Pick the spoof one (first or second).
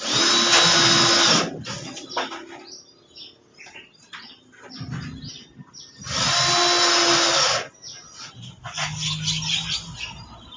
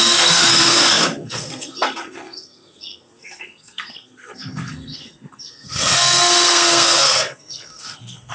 second